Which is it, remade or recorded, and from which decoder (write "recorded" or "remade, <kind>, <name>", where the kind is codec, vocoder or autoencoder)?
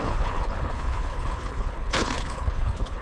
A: remade, codec, HILCodec